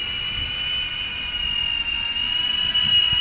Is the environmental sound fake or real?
real